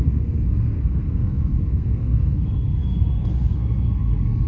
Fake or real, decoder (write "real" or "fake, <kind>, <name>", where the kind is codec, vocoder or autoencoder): fake, codec, SNAC